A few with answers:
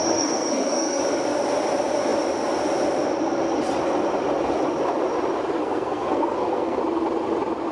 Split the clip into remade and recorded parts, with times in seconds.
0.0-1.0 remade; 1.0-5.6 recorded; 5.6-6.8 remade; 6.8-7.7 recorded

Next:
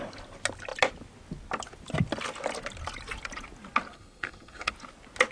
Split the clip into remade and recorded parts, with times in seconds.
0.0-3.9 recorded; 3.9-4.7 remade; 4.7-5.3 recorded

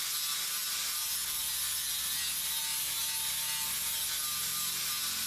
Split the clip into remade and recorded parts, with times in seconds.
0.0-5.3 recorded

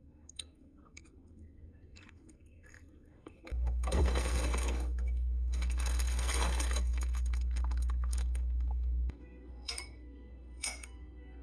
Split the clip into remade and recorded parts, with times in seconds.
0.0-11.4 remade

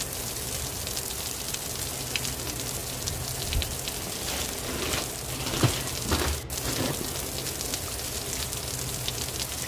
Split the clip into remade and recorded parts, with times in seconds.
0.0-9.7 recorded

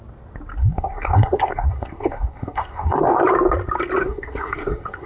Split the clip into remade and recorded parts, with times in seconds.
0.0-0.6 recorded; 0.6-3.1 remade; 3.1-4.0 recorded; 4.0-5.1 remade

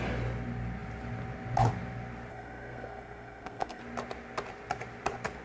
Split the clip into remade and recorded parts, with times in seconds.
0.0-2.3 recorded; 2.3-3.8 remade; 3.8-5.4 recorded